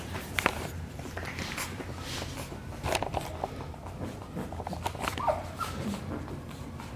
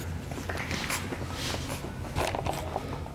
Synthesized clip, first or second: first